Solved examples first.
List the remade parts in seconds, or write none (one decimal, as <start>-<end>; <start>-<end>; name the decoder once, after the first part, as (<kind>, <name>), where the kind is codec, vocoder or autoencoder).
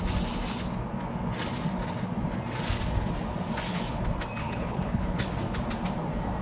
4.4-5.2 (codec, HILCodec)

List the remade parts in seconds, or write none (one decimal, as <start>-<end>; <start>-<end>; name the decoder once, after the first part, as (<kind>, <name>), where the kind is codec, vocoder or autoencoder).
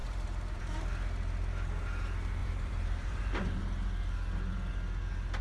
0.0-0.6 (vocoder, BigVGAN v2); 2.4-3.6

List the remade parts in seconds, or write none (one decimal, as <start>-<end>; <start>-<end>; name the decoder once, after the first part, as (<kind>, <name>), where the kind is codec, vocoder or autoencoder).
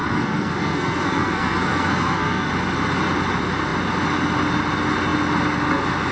0.0-2.5 (codec, SNAC)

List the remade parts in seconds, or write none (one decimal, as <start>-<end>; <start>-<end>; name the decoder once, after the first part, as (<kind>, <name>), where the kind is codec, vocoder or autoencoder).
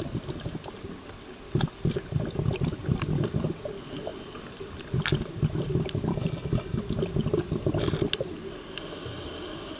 6.1-6.8 (codec, HILCodec)